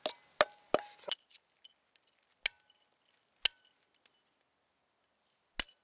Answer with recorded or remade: recorded